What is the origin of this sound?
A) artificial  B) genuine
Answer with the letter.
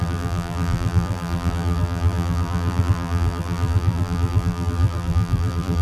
A